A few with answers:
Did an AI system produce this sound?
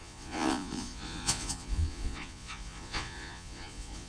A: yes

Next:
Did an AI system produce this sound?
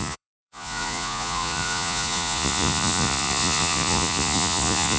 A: yes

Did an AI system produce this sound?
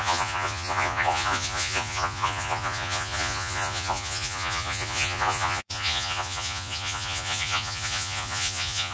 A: yes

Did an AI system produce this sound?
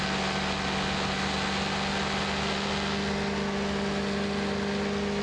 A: no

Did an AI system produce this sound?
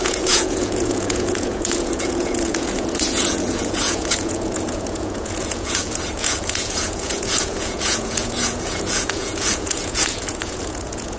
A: yes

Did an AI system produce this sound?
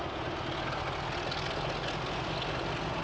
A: no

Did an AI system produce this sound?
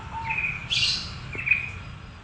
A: no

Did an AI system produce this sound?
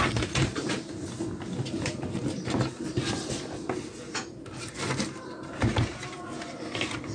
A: no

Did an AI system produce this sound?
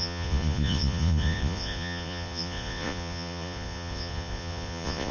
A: yes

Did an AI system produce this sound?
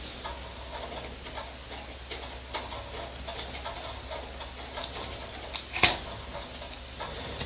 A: no